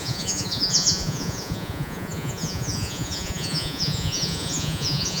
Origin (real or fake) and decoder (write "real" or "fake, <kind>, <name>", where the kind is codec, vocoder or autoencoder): fake, vocoder, Vocos